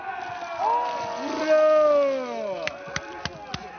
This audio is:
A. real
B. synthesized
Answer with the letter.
A